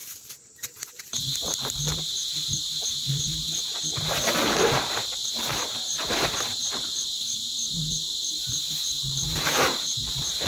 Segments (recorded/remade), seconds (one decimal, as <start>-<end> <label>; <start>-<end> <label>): 0.0-5.2 remade; 5.2-6.5 recorded; 6.5-10.5 remade